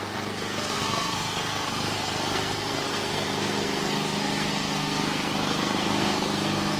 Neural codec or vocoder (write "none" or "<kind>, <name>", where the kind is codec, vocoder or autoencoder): codec, SNAC